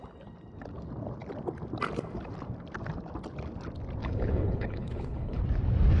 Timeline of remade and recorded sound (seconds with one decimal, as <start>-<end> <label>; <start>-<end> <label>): 0.0-4.0 recorded; 4.0-5.4 remade; 5.4-6.0 recorded